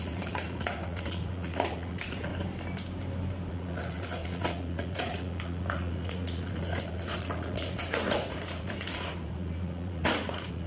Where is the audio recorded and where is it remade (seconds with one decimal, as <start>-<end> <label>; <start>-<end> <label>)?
0.0-2.3 remade; 2.3-3.5 recorded; 3.5-10.7 remade